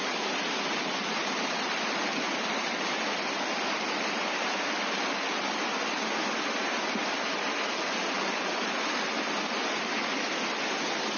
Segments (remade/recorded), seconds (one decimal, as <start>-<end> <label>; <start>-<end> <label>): 0.0-1.0 recorded; 1.0-2.0 remade; 2.0-11.2 recorded